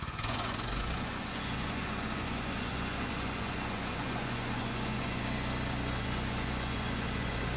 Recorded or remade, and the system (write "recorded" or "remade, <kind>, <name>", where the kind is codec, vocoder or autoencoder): remade, vocoder, Vocos